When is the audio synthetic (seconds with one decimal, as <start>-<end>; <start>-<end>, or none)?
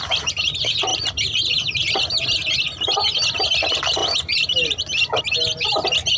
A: 0.0-0.9; 1.9-2.4; 3.4-6.2